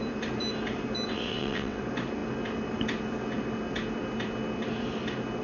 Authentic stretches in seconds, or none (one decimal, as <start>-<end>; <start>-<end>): 0.0-1.1; 1.8-5.4